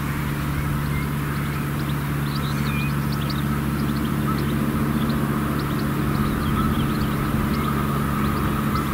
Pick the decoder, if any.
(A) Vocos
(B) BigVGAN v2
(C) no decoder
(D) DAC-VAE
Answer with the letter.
C